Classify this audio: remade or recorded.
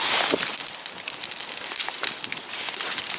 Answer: recorded